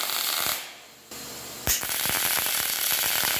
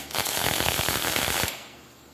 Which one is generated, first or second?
second